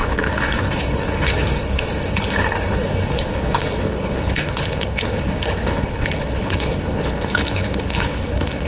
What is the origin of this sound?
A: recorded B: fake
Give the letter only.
B